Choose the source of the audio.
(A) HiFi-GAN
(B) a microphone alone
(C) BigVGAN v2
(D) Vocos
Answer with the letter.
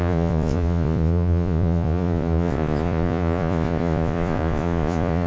D